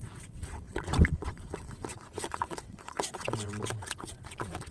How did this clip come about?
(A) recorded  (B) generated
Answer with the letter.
B